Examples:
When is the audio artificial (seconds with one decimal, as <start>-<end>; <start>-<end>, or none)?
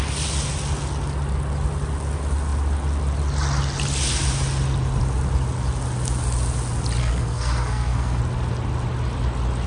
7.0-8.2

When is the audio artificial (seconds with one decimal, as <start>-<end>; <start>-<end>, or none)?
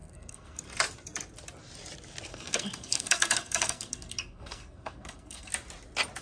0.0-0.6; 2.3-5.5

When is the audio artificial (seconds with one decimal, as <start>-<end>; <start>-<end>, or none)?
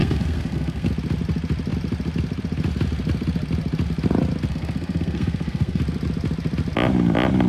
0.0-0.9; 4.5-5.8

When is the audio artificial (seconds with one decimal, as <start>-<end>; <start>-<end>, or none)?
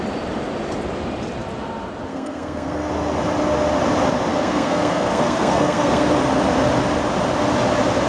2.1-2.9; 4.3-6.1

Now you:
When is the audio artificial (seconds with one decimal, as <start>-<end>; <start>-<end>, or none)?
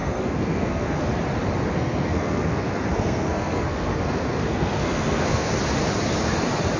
0.0-1.1; 1.7-5.5